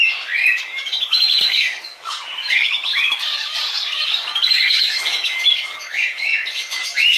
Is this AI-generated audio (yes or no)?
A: yes